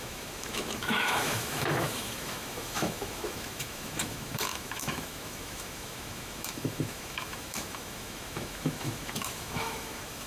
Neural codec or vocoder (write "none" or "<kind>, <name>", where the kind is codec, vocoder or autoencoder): autoencoder, DAC-VAE